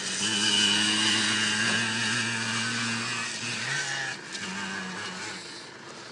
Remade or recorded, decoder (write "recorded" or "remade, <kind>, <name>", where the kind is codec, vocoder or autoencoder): recorded